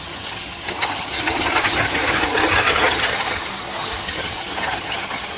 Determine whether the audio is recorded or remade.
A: remade